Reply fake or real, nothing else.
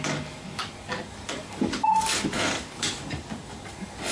fake